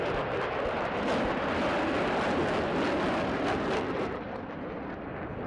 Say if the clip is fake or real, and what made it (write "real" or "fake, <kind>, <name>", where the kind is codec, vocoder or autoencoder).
real